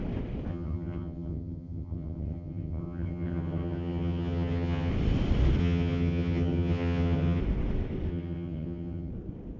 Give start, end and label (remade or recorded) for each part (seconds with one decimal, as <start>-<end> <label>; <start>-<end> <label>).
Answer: 0.0-0.5 recorded; 0.5-4.9 remade; 4.9-5.6 recorded; 5.6-7.4 remade; 7.4-8.1 recorded; 8.1-9.1 remade; 9.1-9.6 recorded